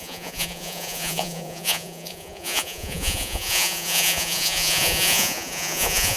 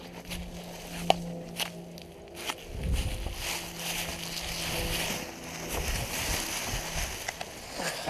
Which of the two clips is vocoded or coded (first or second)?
first